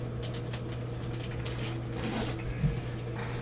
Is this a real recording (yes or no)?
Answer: yes